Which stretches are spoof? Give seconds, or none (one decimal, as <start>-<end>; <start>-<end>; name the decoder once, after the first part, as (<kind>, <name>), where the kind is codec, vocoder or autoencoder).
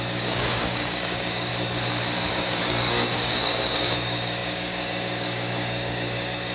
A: 0.0-1.5 (codec, DAC); 2.3-6.5